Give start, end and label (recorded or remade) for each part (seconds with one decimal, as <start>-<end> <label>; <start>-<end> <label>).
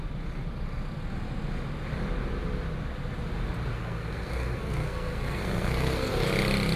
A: 0.0-3.7 recorded; 3.7-6.1 remade; 6.1-6.8 recorded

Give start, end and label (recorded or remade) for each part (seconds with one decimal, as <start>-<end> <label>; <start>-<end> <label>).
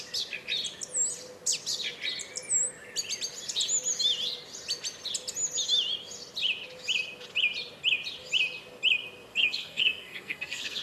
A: 0.0-9.3 recorded; 9.3-10.8 remade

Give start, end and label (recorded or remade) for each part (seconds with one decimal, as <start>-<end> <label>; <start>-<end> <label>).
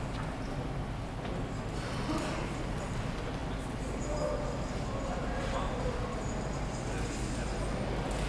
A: 0.0-8.3 recorded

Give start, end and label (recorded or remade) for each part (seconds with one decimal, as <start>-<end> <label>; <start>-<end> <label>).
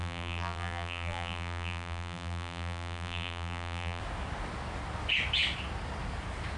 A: 0.0-4.0 remade; 4.0-6.6 recorded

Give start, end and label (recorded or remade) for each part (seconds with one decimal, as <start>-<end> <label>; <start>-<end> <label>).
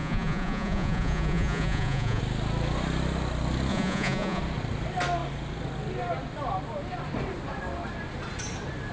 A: 0.0-2.2 remade; 2.2-3.7 recorded; 3.7-4.4 remade; 4.4-8.9 recorded